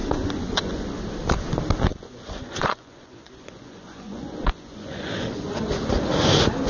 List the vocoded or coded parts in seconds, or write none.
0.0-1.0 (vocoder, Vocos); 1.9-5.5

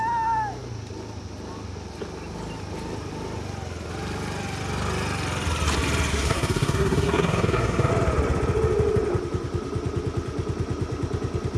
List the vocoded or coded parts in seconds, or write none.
6.1-7.9 (codec, SNAC)

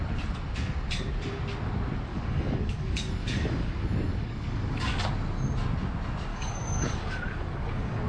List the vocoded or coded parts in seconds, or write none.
2.1-5.1 (codec, DAC); 6.3-8.1

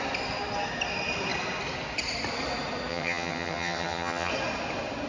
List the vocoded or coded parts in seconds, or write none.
2.9-4.3 (vocoder, HiFi-GAN)

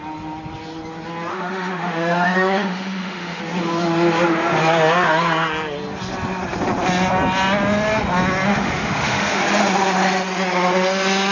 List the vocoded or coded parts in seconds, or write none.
1.3-3.4 (autoencoder, DAC-VAE); 8.5-9.4

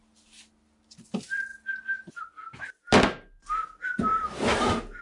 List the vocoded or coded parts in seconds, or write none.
1.5-2.6 (vocoder, BigVGAN v2)

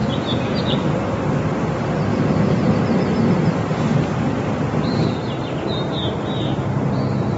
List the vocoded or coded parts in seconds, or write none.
0.0-0.9 (vocoder, Vocos); 2.1-2.7